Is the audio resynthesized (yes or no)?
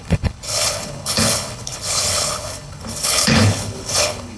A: yes